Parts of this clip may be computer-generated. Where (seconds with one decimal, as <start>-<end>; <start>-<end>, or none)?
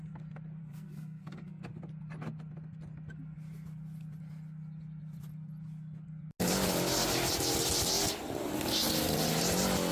0.6-1.6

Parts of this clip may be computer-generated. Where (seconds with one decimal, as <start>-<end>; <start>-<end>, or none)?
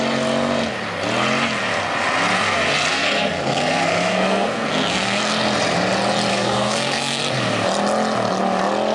2.9-5.2; 6.3-7.2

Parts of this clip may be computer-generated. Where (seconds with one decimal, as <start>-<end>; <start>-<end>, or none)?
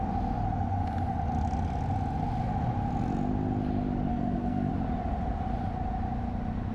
4.1-4.7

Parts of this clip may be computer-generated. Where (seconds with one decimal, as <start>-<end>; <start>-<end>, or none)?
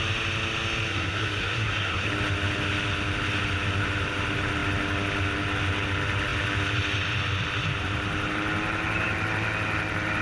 0.9-2.1